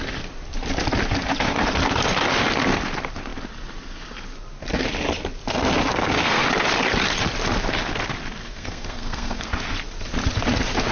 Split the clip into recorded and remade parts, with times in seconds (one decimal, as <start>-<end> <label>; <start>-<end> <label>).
0.0-5.9 recorded; 5.9-6.4 remade; 6.4-8.4 recorded; 8.4-9.5 remade; 9.5-10.9 recorded